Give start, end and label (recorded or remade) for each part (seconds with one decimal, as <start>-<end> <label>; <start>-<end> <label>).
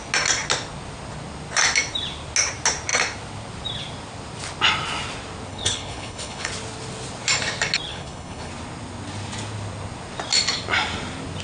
0.0-5.5 recorded; 5.5-6.5 remade; 6.5-7.9 recorded; 7.9-8.5 remade; 8.5-11.4 recorded